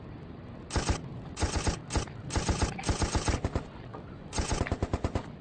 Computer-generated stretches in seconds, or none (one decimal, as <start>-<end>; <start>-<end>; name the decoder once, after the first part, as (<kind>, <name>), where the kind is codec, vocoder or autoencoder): 1.1-1.6 (vocoder, Vocos); 3.9-4.6